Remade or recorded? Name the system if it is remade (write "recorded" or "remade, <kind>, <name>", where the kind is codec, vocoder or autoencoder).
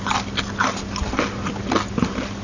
recorded